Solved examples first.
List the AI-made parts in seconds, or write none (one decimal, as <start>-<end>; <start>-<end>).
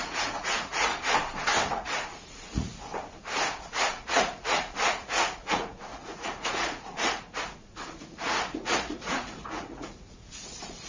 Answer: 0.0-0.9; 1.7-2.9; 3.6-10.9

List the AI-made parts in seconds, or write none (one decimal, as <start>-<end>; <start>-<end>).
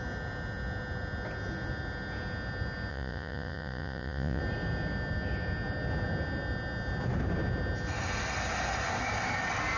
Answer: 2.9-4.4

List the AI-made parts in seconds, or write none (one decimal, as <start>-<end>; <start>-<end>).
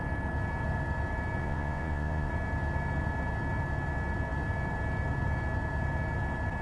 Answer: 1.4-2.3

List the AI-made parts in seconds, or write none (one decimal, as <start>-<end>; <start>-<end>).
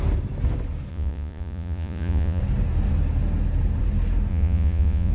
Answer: 0.9-2.4; 4.3-5.1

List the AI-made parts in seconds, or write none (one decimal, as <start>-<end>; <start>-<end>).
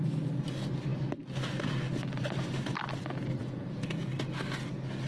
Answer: 3.4-4.1